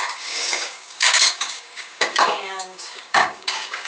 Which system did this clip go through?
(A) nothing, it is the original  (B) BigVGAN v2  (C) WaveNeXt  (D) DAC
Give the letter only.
D